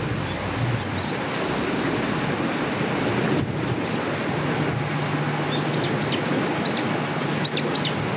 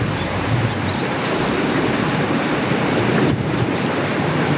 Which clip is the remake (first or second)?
second